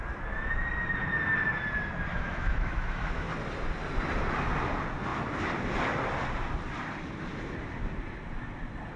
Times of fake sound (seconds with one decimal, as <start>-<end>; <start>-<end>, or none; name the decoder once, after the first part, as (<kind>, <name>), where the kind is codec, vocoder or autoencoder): 2.1-3.3 (autoencoder, DAC-VAE)